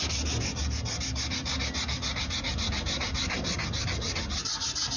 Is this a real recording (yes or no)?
yes